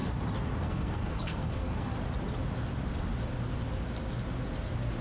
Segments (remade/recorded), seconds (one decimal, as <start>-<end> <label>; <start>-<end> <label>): 0.0-0.6 recorded; 0.6-1.9 remade; 1.9-5.0 recorded

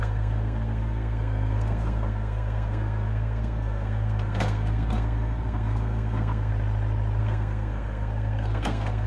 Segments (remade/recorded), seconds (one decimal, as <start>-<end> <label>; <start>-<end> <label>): 0.0-6.5 remade; 6.5-7.2 recorded; 7.2-9.1 remade

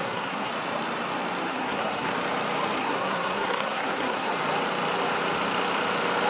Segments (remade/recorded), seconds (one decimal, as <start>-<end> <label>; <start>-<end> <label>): 0.0-0.5 remade; 0.5-1.5 recorded; 1.5-2.1 remade; 2.1-2.8 recorded; 2.8-4.3 remade; 4.3-6.3 recorded

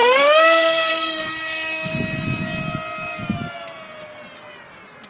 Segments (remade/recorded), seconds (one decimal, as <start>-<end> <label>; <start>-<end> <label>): 0.0-1.9 remade; 1.9-5.1 recorded

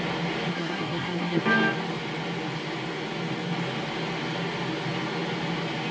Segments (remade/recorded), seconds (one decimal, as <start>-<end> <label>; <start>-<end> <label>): 0.0-0.5 recorded; 0.5-1.4 remade; 1.4-5.9 recorded

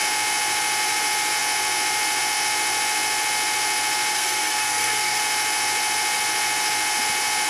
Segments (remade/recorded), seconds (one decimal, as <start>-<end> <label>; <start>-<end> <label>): 0.0-4.1 recorded; 4.1-5.2 remade; 5.2-7.5 recorded

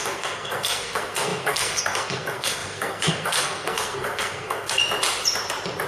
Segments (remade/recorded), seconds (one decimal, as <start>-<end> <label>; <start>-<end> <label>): 0.0-4.8 remade; 4.8-5.9 recorded

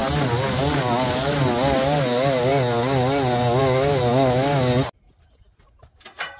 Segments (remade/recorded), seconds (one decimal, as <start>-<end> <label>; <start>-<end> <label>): 0.0-6.4 recorded